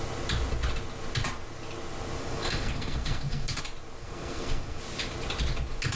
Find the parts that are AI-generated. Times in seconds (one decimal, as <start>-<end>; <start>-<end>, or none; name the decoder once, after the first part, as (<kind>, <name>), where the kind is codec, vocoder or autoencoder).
2.2-3.6 (codec, SNAC); 4.0-4.8